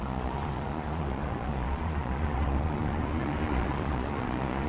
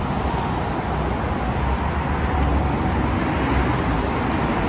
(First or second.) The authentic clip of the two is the second